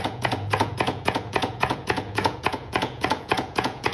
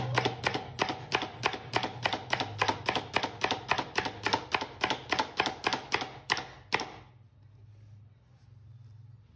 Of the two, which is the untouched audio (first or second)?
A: second